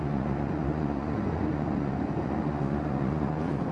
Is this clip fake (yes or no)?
yes